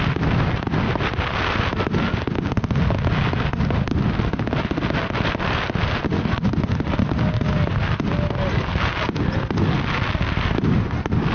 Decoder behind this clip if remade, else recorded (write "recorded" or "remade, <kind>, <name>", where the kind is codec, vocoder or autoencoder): recorded